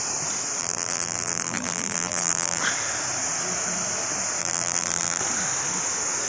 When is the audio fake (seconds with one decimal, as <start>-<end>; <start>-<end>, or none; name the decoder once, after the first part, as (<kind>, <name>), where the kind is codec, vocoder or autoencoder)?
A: 0.6-2.6 (vocoder, BigVGAN v2); 4.4-5.2